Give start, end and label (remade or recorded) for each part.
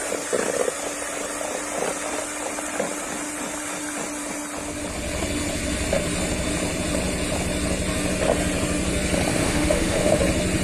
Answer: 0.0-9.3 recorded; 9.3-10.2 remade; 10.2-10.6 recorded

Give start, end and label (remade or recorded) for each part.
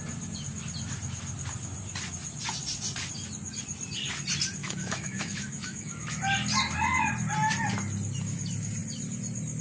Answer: 0.0-4.6 recorded; 4.6-6.2 remade; 6.2-9.6 recorded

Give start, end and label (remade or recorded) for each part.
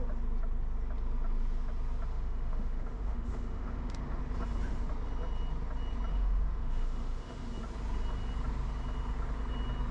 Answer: 0.0-2.1 recorded; 2.1-4.2 remade; 4.2-6.1 recorded; 6.1-7.5 remade; 7.5-9.9 recorded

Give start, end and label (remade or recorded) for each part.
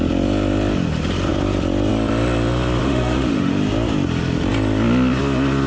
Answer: 0.0-2.8 recorded; 2.8-3.5 remade; 3.5-5.7 recorded